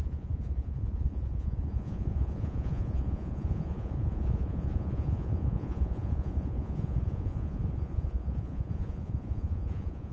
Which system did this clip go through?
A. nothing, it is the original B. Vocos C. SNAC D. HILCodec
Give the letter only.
B